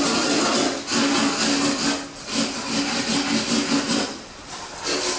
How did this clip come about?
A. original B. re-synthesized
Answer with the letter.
A